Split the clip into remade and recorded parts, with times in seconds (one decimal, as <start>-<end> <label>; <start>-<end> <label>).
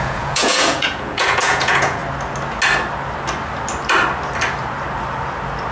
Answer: 0.0-2.0 remade; 2.0-5.7 recorded